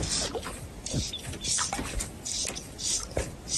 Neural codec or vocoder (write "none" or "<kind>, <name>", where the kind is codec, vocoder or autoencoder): none